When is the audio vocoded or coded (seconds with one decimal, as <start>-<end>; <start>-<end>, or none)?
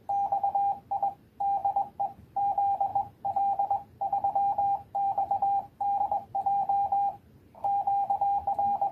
1.1-8.9